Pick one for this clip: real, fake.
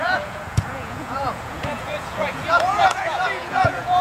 fake